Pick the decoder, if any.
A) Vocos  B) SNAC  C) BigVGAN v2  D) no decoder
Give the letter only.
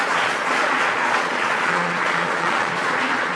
A